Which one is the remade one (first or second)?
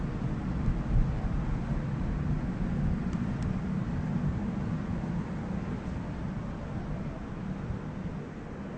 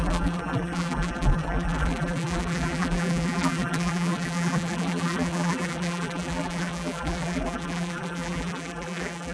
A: second